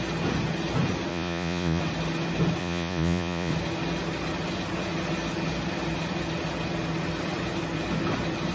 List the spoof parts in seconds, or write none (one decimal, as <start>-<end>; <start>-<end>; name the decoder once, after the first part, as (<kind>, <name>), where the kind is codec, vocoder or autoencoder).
1.1-1.8 (vocoder, Vocos); 2.6-3.5